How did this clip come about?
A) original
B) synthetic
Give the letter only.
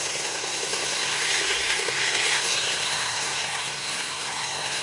B